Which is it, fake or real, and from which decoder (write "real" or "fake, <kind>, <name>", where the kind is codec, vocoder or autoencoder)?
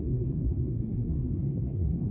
fake, codec, SNAC